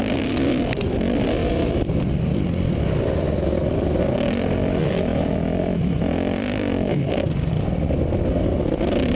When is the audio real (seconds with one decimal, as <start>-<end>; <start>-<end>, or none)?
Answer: 0.0-9.1